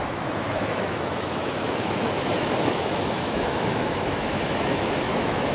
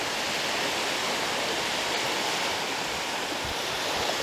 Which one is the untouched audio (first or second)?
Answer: second